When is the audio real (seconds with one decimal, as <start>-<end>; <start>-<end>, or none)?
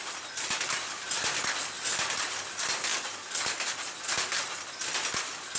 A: 0.0-5.6